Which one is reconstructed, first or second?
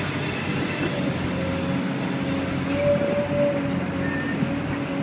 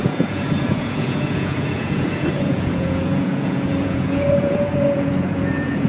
second